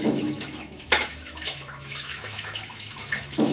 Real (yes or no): no